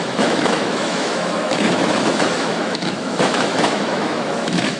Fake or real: fake